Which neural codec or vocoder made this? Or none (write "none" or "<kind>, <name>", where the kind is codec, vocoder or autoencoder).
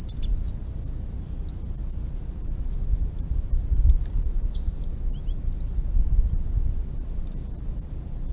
none